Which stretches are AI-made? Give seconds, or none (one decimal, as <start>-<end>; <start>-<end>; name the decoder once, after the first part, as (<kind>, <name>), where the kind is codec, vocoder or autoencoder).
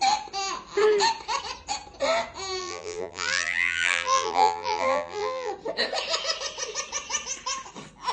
2.6-5.5 (vocoder, BigVGAN v2)